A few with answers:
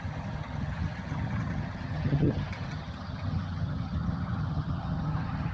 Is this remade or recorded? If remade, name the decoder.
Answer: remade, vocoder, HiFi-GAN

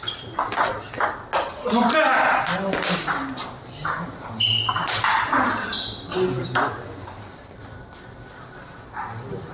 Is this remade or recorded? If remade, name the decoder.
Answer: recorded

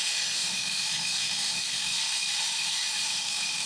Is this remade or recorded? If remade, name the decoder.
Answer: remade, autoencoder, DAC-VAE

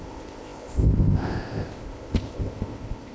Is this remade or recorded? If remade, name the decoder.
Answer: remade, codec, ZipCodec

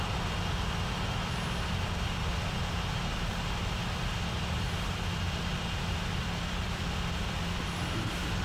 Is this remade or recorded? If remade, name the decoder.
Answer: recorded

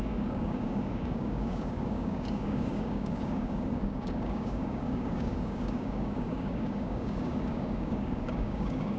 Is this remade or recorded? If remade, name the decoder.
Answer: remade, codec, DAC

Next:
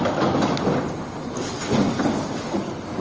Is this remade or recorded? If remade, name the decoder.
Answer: recorded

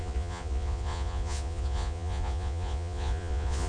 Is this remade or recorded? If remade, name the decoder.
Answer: remade, vocoder, Vocos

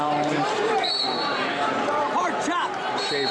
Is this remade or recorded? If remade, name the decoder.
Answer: remade, vocoder, BigVGAN v2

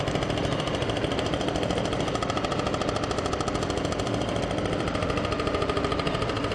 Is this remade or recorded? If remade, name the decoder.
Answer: remade, vocoder, BigVGAN v2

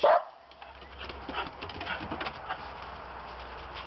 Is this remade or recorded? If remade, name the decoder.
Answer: recorded